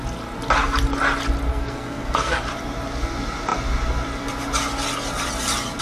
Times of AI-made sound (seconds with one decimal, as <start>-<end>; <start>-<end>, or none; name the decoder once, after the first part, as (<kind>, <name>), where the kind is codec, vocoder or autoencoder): 1.5-2.4 (codec, SNAC)